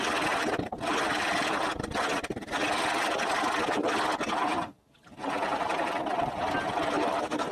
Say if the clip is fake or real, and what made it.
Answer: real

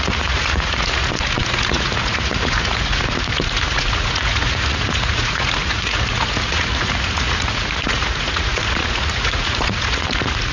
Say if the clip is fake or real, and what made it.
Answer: fake, vocoder, Vocos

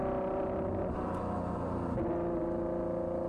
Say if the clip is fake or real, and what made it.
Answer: real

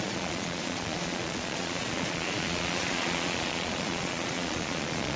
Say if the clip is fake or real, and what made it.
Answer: fake, vocoder, Vocos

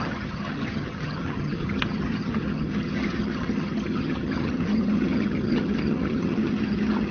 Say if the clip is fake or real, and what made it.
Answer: fake, vocoder, HiFi-GAN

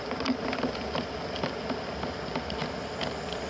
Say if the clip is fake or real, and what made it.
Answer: real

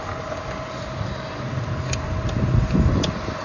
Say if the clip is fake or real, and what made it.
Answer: real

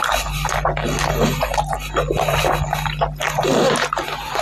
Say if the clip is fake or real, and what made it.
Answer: real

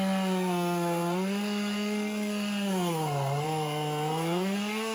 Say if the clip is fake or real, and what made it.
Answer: fake, codec, SNAC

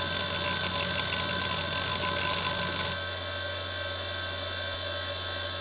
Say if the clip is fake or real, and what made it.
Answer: real